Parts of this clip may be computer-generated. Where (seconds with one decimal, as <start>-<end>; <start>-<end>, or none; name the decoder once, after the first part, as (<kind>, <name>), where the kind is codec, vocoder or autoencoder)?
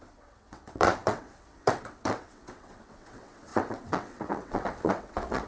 0.0-5.5 (vocoder, WaveNeXt)